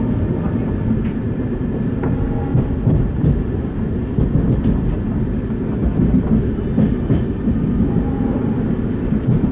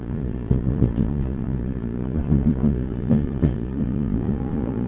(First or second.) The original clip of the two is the first